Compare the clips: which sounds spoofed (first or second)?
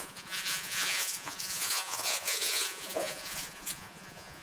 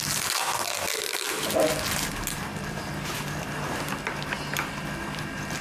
first